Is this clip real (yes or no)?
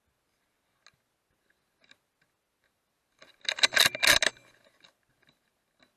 yes